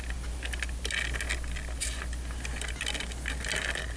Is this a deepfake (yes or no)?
no